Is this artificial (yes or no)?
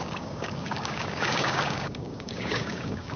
yes